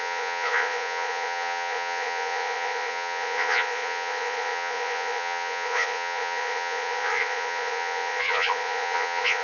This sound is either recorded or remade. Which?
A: remade